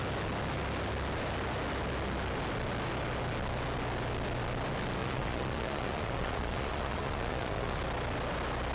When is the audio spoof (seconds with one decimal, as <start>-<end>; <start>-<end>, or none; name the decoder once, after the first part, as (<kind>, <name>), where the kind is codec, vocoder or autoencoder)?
5.0-7.8 (vocoder, Vocos)